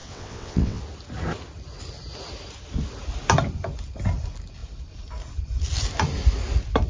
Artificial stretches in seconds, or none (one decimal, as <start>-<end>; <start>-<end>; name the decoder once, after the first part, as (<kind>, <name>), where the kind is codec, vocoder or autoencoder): 0.0-0.8 (vocoder, WaveNeXt)

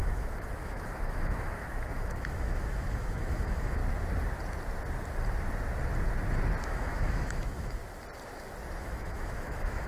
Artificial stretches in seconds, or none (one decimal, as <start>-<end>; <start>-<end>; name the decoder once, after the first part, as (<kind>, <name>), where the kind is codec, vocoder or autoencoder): 0.0-3.8 (autoencoder, DAC-VAE); 6.6-7.8; 8.8-9.9

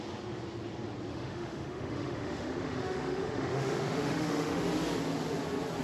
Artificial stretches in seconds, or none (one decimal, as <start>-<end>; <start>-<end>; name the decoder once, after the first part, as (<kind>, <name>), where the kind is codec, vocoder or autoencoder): 1.1-4.6 (autoencoder, DAC-VAE)

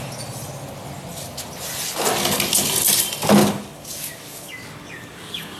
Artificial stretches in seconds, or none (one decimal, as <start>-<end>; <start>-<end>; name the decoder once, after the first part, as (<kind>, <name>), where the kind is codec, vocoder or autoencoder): 3.4-5.6 (codec, DAC)

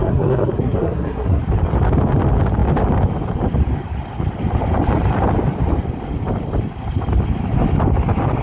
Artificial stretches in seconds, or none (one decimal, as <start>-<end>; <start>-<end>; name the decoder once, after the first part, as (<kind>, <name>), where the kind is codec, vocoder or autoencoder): 0.0-1.4 (codec, SNAC)

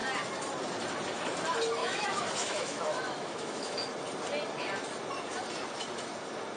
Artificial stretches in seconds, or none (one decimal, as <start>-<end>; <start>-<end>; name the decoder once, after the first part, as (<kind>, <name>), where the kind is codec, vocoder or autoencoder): 1.8-3.9 (autoencoder, DAC-VAE)

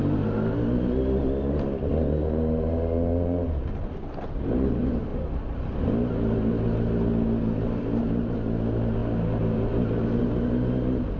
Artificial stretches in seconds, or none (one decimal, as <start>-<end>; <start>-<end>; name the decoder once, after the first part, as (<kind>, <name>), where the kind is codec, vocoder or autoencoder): none